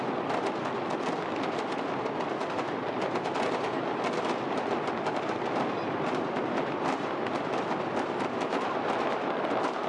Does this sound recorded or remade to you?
recorded